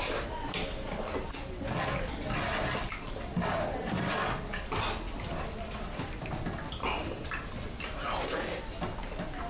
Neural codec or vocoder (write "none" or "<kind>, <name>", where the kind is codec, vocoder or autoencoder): none